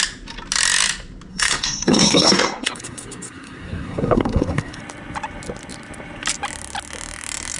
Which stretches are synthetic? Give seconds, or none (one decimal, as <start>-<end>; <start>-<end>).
1.3-4.8